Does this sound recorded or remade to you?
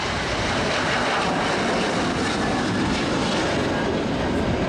remade